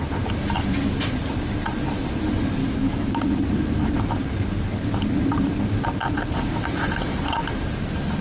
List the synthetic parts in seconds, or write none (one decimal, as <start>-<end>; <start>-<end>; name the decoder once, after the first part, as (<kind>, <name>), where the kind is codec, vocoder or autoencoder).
2.6-3.1 (autoencoder, DAC-VAE)